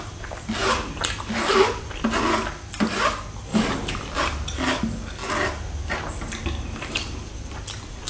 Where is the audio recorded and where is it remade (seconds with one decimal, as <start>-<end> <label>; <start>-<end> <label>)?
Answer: 0.0-8.1 recorded